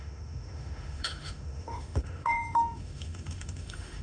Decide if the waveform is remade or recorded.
remade